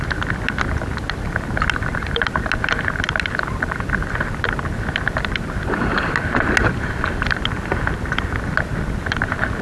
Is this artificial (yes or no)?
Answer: no